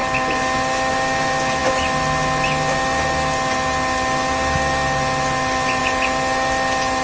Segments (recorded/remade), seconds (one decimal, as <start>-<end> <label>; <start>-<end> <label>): 0.0-7.0 recorded